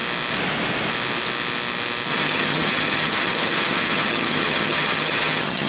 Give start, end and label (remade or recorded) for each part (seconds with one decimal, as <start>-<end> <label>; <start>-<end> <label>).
0.0-2.1 recorded; 2.1-5.7 remade